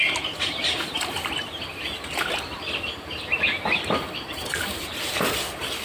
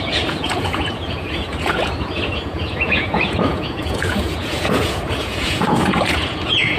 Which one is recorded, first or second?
first